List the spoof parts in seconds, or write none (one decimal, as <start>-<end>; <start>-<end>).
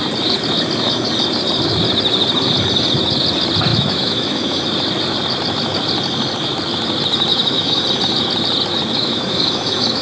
3.7-4.6; 7.3-7.8; 8.9-10.0